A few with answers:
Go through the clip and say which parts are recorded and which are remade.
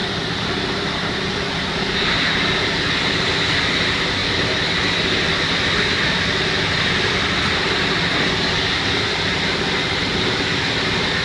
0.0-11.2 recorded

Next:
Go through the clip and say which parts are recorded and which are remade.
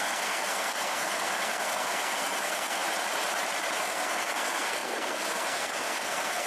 0.0-2.8 remade; 2.8-3.8 recorded; 3.8-6.5 remade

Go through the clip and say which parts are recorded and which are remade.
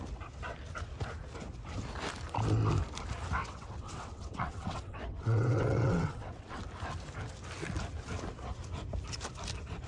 0.0-3.4 recorded; 3.4-6.6 remade; 6.6-9.9 recorded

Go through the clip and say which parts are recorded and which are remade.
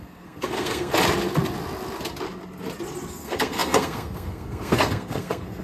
0.0-0.9 remade; 0.9-3.1 recorded; 3.1-5.6 remade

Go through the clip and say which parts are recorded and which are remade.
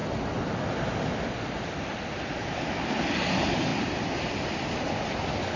0.0-5.6 recorded